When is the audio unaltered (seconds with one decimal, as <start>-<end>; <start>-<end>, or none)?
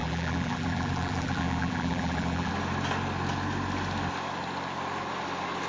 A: 2.5-5.7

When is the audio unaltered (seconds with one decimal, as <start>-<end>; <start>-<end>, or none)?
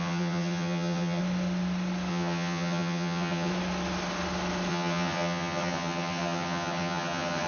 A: 1.2-2.1; 3.5-4.7